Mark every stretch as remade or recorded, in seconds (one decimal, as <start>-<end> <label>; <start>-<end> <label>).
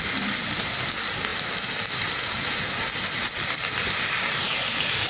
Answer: 0.0-5.1 recorded